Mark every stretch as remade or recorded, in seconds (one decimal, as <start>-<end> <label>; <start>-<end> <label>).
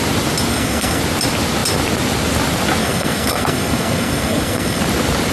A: 0.0-0.5 recorded; 0.5-1.0 remade; 1.0-2.8 recorded; 2.8-4.8 remade; 4.8-5.3 recorded